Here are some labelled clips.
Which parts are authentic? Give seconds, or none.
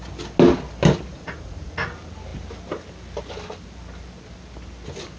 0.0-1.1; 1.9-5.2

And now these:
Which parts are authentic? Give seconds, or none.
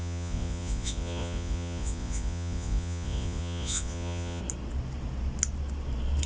4.4-6.3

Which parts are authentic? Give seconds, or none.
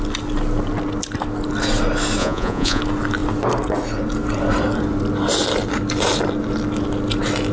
0.0-2.2; 2.8-7.5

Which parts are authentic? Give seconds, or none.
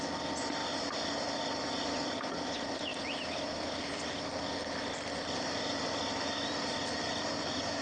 0.0-7.8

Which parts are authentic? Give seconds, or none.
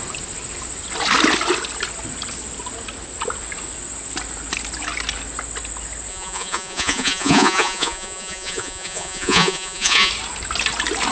0.0-6.1; 10.1-11.1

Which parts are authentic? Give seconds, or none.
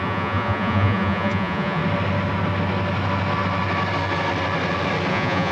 1.8-5.1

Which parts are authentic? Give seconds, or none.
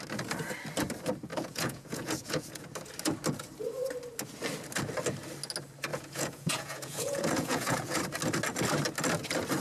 0.0-1.3; 2.7-5.9; 8.0-9.6